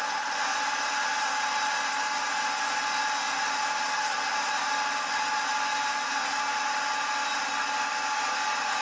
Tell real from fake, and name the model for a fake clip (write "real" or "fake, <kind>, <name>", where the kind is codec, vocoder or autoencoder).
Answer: real